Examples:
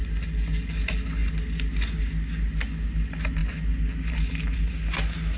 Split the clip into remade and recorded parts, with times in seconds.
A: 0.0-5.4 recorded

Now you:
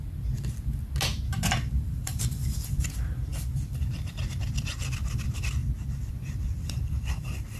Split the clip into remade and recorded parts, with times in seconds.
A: 0.0-1.5 recorded; 1.5-5.6 remade; 5.6-6.1 recorded; 6.1-7.6 remade

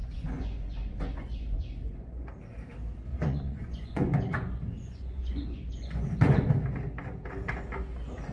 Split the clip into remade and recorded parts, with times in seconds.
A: 0.0-2.3 remade; 2.3-3.1 recorded; 3.1-6.5 remade; 6.5-8.3 recorded

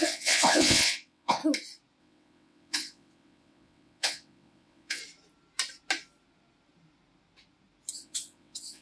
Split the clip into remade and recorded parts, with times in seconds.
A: 0.0-1.4 remade; 1.4-2.0 recorded; 2.0-5.0 remade; 5.0-7.9 recorded; 7.9-8.8 remade